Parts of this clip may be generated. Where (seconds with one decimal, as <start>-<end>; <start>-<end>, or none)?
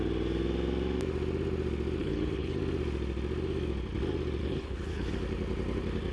2.0-2.6; 4.4-5.1